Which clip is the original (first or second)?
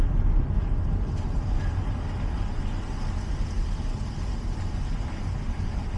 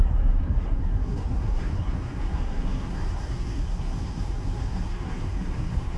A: first